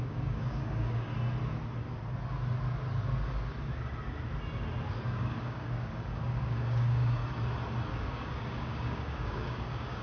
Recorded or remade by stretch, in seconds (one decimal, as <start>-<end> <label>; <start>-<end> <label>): 0.0-1.1 remade; 1.1-4.9 recorded; 4.9-7.2 remade; 7.2-7.9 recorded; 7.9-10.0 remade